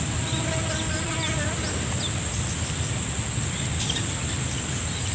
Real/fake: real